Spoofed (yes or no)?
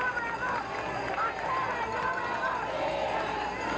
no